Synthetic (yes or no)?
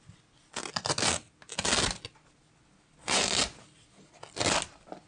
no